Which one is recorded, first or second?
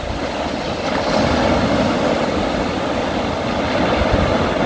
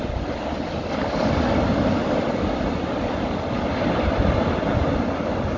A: first